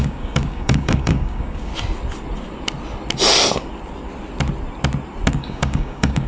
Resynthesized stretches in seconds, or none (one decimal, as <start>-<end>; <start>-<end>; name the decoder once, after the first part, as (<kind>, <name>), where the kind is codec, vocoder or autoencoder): 0.0-1.7 (codec, DAC); 5.3-6.3